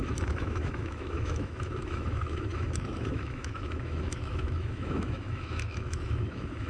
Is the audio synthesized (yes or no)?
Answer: yes